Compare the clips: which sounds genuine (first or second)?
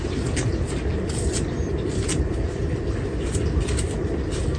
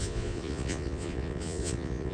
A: first